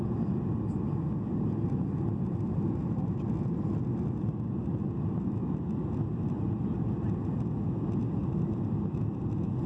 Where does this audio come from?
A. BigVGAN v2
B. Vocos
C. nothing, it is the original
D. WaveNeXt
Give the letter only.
C